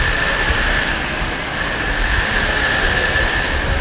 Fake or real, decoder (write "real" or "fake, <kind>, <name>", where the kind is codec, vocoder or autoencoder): real